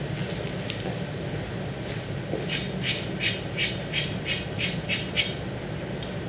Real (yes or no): yes